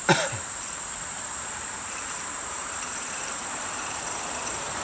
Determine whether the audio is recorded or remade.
remade